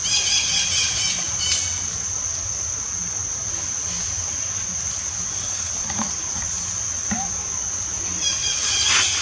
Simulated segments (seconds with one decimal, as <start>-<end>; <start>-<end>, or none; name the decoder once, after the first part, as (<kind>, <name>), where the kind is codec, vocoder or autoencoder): 5.8-6.4 (vocoder, Vocos); 8.4-9.2